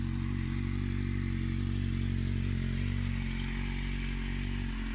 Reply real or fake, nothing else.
real